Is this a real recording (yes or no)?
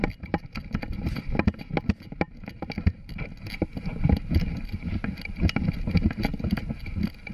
yes